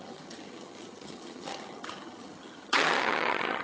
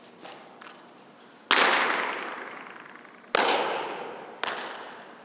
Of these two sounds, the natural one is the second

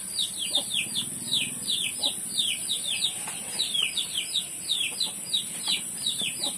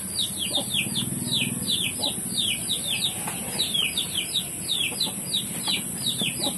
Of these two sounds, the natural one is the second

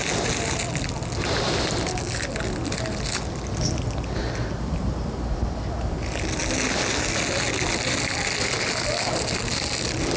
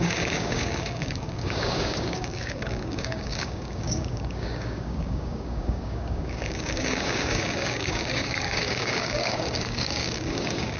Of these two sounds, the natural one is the first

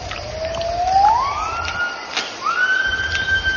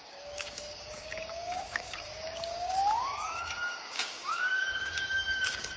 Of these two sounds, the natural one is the first